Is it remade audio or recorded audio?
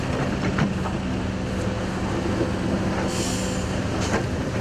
recorded